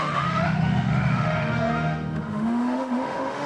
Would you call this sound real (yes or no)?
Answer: no